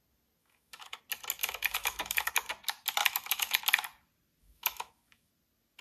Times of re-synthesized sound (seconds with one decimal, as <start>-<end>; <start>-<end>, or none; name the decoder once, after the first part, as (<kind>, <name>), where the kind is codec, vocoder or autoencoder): 0.4-1.0 (autoencoder, DAC-VAE); 1.4-2.3; 3.0-3.6; 4.4-5.3